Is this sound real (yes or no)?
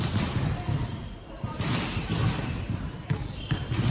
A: no